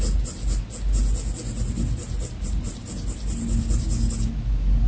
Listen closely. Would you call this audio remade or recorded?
recorded